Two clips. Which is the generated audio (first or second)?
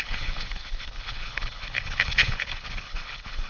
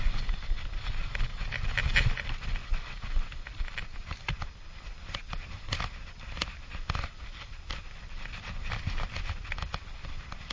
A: first